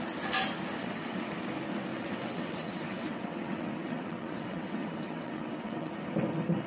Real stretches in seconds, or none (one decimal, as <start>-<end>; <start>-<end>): 0.0-0.8; 1.3-1.9; 5.9-6.7